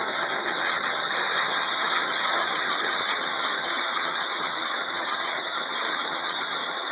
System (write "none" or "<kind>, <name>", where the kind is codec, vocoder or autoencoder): vocoder, HiFi-GAN